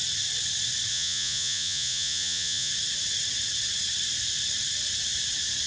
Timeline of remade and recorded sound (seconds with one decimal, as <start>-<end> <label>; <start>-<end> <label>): 0.0-0.9 recorded; 0.9-2.7 remade; 2.7-5.7 recorded